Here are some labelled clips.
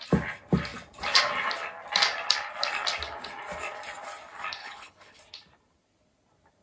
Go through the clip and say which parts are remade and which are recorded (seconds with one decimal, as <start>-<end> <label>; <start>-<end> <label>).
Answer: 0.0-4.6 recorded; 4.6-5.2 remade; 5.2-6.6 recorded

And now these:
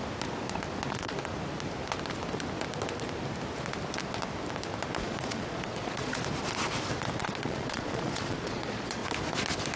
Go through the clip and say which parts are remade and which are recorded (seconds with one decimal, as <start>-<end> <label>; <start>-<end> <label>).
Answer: 0.0-0.9 recorded; 0.9-1.3 remade; 1.3-5.0 recorded; 5.0-6.1 remade; 6.1-7.2 recorded; 7.2-9.0 remade; 9.0-9.8 recorded

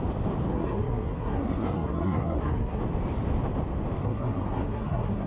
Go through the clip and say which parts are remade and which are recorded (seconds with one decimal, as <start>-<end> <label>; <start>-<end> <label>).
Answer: 0.0-0.5 recorded; 0.5-2.8 remade; 2.8-4.0 recorded; 4.0-5.3 remade

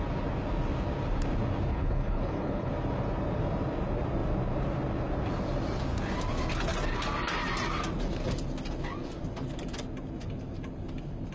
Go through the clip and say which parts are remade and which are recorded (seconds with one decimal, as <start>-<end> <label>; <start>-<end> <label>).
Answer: 0.0-1.7 recorded; 1.7-2.7 remade; 2.7-11.3 recorded

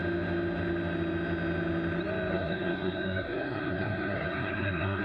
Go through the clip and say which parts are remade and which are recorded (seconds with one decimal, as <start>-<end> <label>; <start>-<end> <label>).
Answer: 0.0-2.3 recorded; 2.3-5.0 remade

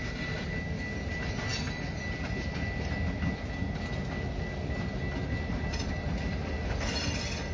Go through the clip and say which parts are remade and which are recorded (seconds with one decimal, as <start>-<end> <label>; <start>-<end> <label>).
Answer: 0.0-7.5 recorded

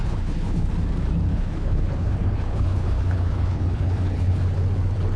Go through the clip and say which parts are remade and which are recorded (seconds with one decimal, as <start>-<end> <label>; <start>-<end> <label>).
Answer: 0.0-0.7 remade; 0.7-1.3 recorded; 1.3-4.4 remade; 4.4-5.2 recorded

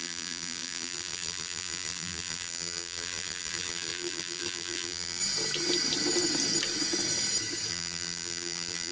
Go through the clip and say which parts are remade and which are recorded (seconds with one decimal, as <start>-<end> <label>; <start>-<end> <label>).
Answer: 0.0-5.2 remade; 5.2-7.7 recorded; 7.7-8.9 remade